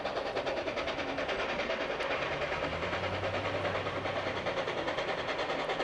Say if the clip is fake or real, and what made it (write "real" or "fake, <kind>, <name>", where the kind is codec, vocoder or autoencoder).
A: real